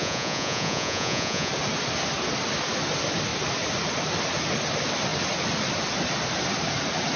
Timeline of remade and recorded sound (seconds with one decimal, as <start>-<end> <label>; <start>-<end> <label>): 0.0-1.5 remade; 1.5-7.2 recorded

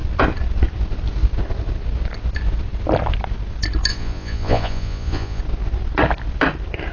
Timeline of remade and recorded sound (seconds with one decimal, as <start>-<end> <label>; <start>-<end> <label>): 0.0-3.9 recorded; 3.9-5.4 remade; 5.4-6.9 recorded

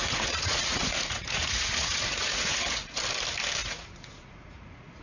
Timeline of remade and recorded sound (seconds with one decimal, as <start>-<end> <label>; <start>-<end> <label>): 0.0-3.0 remade; 3.0-3.6 recorded; 3.6-5.0 remade

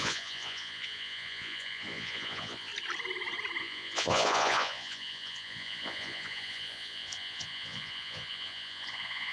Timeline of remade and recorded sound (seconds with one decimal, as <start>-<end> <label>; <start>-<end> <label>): 0.0-2.7 remade; 2.7-3.6 recorded; 3.6-9.3 remade

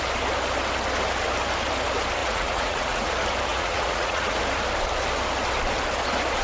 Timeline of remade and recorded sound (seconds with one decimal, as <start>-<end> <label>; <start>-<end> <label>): 0.0-2.2 recorded; 2.2-3.1 remade; 3.1-3.5 recorded; 3.5-4.4 remade; 4.4-6.4 recorded

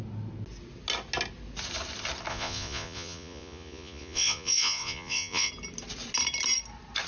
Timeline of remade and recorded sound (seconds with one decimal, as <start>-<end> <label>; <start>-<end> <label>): 0.0-2.3 recorded; 2.3-5.5 remade; 5.5-7.1 recorded